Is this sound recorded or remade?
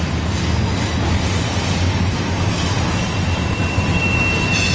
recorded